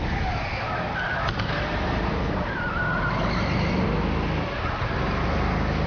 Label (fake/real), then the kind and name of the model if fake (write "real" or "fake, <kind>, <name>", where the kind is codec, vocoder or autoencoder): real